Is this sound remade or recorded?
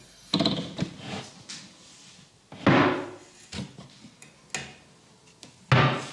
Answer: recorded